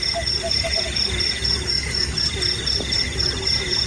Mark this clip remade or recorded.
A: recorded